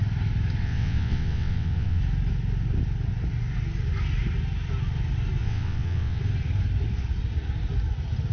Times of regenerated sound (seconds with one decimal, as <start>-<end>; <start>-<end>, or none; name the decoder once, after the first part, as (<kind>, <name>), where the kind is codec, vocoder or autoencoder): 0.6-2.0 (vocoder, WaveNeXt); 5.4-6.2